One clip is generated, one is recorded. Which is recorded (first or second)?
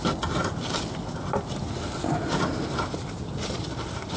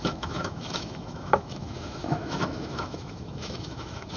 first